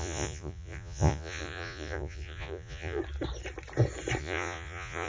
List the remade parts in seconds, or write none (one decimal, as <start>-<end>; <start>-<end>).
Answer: 0.0-3.0; 4.2-5.1